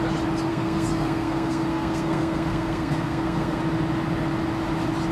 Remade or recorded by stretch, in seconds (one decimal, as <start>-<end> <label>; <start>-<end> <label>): 0.0-0.5 recorded; 0.5-3.6 remade; 3.6-5.1 recorded